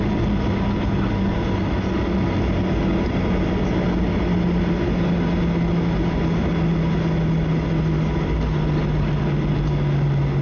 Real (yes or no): yes